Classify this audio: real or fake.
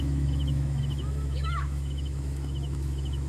fake